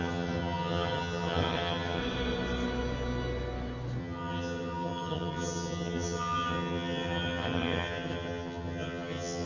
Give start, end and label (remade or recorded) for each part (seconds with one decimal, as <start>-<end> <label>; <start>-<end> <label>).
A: 0.0-2.0 remade; 2.0-4.0 recorded; 4.0-9.5 remade